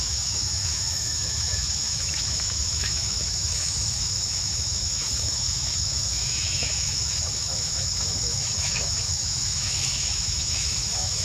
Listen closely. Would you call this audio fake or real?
fake